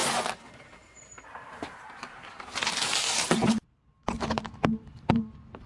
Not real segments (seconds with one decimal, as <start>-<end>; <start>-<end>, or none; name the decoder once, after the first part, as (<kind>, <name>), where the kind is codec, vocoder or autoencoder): 0.6-5.7 (vocoder, BigVGAN v2)